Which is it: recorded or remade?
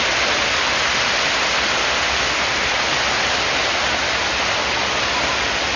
recorded